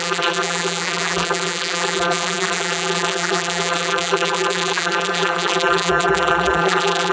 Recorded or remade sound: remade